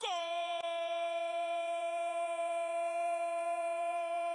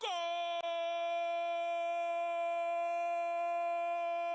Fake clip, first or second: first